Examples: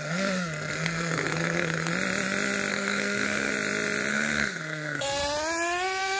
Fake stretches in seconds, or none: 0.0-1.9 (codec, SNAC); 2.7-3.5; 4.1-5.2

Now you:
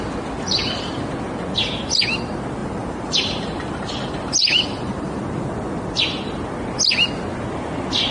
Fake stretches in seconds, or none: 2.6-3.9 (vocoder, BigVGAN v2); 4.4-5.2

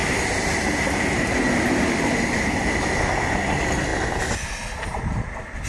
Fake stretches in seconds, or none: none

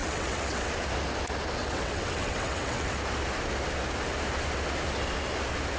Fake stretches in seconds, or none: 0.0-0.7 (vocoder, WaveNeXt); 1.6-3.0

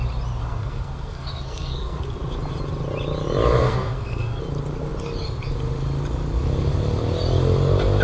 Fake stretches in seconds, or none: 0.4-2.0 (codec, SNAC); 3.6-4.4

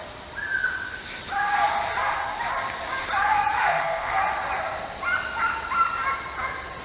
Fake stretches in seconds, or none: 3.6-4.2 (codec, SNAC)

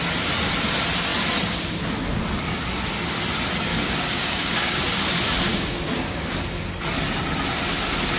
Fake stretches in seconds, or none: 3.7-4.8 (codec, DAC); 5.5-6.3